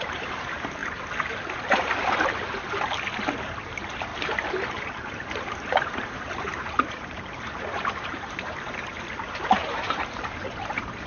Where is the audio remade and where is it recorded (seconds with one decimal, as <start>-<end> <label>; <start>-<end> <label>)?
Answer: 0.0-0.8 remade; 0.8-3.4 recorded; 3.4-11.1 remade